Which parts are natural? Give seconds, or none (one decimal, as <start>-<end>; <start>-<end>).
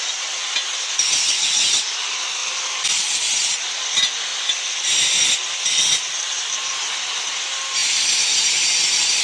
0.0-9.2